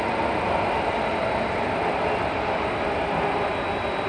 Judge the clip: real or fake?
real